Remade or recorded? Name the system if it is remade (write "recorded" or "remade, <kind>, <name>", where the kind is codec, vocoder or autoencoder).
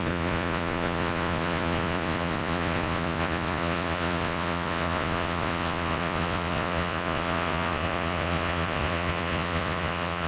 remade, vocoder, Vocos